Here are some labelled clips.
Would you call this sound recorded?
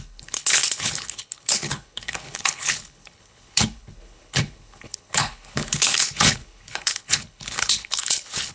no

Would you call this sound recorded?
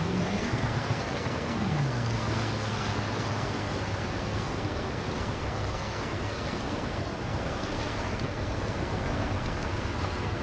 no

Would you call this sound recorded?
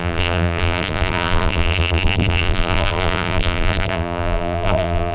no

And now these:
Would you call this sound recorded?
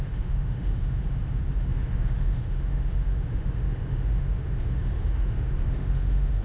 no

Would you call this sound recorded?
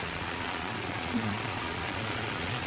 no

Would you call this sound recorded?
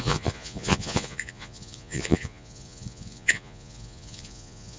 no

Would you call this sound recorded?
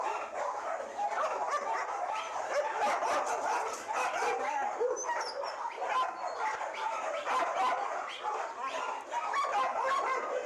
yes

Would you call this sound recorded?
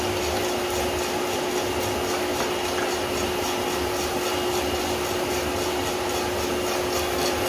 yes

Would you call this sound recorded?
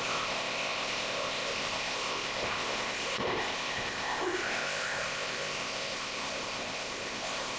no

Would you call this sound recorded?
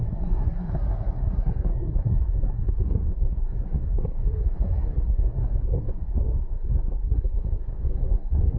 no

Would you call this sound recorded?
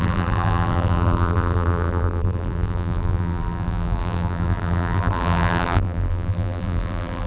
no